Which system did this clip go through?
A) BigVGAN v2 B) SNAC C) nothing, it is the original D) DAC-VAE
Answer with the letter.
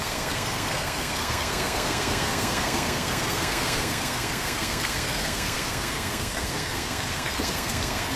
B